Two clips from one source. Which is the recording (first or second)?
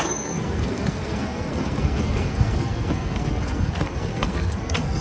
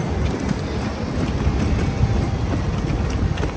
second